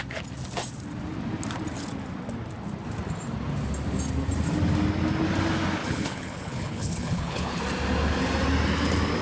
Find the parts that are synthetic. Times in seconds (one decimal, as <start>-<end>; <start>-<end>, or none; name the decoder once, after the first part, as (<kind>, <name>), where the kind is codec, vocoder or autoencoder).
5.8-7.6 (codec, HILCodec)